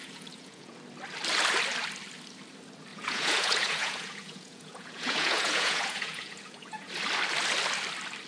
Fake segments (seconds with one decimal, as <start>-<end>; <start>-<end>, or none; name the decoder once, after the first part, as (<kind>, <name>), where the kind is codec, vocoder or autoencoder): 0.0-0.8 (vocoder, Vocos); 2.9-6.9